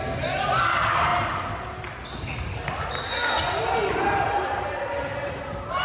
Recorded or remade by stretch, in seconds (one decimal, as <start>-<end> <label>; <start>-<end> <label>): 0.0-5.8 recorded